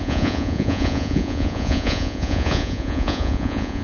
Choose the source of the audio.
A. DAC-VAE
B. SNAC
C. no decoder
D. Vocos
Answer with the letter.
D